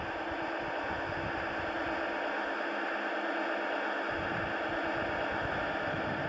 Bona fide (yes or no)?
yes